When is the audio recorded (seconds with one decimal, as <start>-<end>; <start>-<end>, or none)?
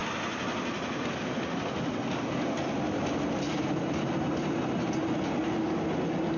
0.0-6.4